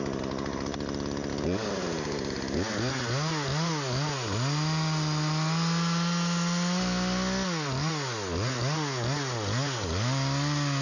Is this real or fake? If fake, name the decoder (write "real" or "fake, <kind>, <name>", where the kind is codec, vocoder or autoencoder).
real